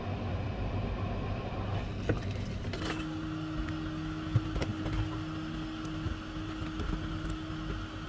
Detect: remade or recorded recorded